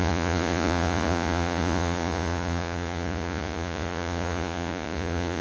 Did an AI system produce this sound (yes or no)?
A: yes